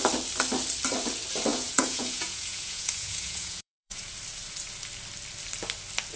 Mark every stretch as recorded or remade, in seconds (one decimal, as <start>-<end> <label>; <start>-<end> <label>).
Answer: 0.0-1.5 recorded; 1.5-4.1 remade; 4.1-6.2 recorded

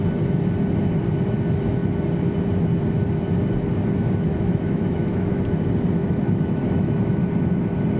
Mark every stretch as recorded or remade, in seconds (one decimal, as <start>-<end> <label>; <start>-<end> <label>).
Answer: 0.0-4.3 recorded; 4.3-5.4 remade; 5.4-6.0 recorded; 6.0-7.3 remade; 7.3-8.0 recorded

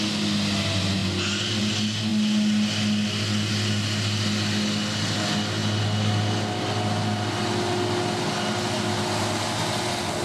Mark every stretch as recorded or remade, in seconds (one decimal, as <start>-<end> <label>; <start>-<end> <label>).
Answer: 0.0-10.2 recorded

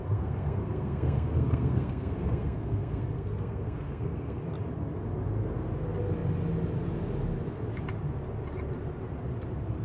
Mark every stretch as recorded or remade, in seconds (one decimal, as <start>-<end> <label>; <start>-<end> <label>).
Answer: 0.0-4.4 remade; 4.4-9.8 recorded